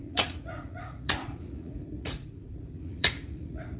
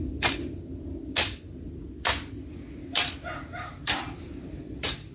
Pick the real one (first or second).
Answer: second